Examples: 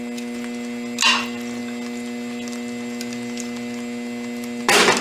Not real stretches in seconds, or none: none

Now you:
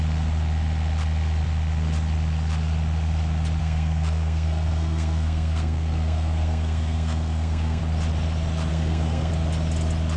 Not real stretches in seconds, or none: 3.6-7.8 (codec, SNAC); 8.7-9.3

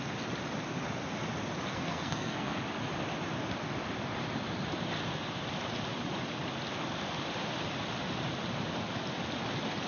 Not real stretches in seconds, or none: 1.7-2.6 (codec, SNAC)

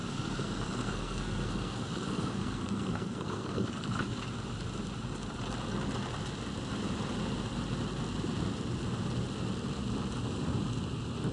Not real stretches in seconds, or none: 0.0-4.2 (codec, SNAC)

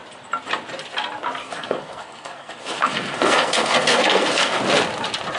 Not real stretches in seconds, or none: 1.4-4.6 (codec, SNAC)

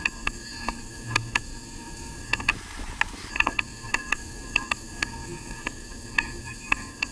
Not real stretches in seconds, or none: 0.0-2.5 (codec, SNAC); 3.3-7.1

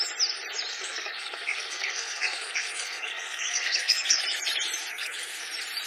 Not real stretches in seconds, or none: 0.7-4.2 (codec, SNAC); 4.9-5.5